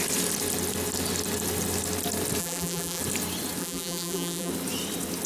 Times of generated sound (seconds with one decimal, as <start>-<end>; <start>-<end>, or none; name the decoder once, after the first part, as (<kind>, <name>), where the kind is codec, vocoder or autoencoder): 2.4-3.0 (vocoder, BigVGAN v2); 3.6-4.5